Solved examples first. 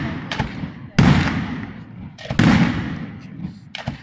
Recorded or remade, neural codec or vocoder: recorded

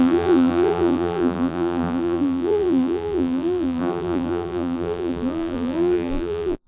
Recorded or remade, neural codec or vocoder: remade, vocoder, BigVGAN v2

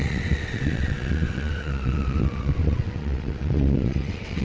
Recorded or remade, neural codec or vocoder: remade, vocoder, WaveNeXt